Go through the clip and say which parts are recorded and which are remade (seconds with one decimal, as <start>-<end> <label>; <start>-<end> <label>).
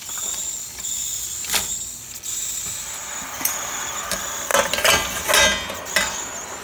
0.0-1.1 remade; 1.1-3.3 recorded; 3.3-4.5 remade; 4.5-6.6 recorded